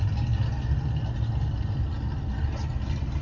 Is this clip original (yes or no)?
yes